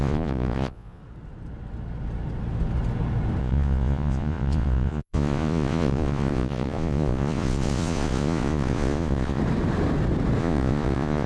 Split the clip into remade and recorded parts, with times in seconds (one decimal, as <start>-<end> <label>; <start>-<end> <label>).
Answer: 0.0-1.0 remade; 1.0-3.4 recorded; 3.4-9.4 remade; 9.4-10.4 recorded; 10.4-11.3 remade

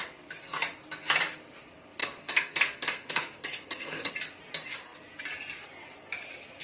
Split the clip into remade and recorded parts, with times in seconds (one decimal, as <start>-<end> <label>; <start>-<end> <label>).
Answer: 0.0-2.0 recorded; 2.0-4.1 remade; 4.1-6.6 recorded